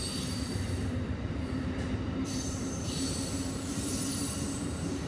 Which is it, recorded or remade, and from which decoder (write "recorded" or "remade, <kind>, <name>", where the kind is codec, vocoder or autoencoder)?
remade, vocoder, BigVGAN v2